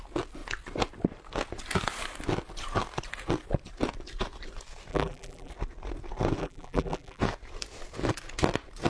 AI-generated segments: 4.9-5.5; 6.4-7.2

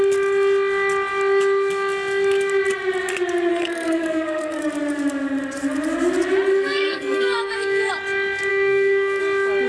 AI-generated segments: 3.5-4.6; 6.5-7.9; 8.5-9.2

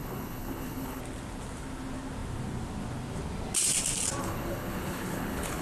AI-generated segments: 0.0-1.0; 4.2-5.6

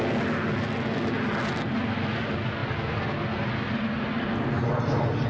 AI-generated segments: none